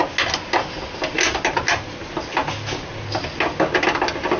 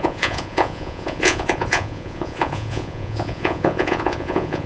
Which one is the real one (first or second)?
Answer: first